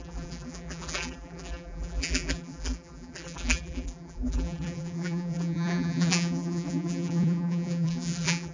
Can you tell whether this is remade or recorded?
remade